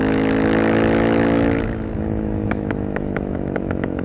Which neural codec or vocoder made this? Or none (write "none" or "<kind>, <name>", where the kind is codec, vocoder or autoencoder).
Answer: autoencoder, DAC-VAE